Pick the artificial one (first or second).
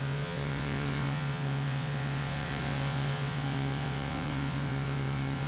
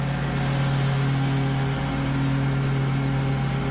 first